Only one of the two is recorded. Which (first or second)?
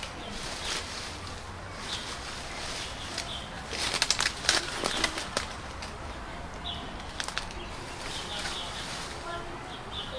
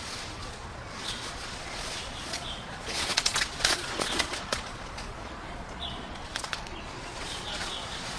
first